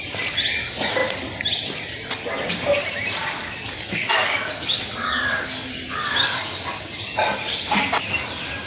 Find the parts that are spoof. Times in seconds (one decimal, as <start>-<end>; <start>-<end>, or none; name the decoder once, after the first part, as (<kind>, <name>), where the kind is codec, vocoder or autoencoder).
3.2-6.7 (codec, DAC)